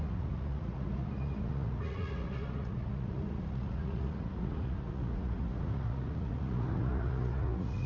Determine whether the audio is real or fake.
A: fake